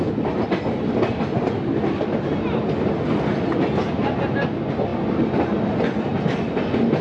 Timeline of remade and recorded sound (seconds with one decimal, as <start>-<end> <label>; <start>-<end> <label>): 0.0-7.0 recorded